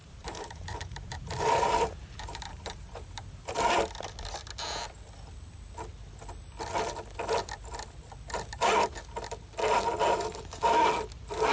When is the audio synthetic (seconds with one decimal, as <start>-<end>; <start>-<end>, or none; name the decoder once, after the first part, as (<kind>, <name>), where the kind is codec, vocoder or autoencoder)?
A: 0.0-3.5 (vocoder, BigVGAN v2)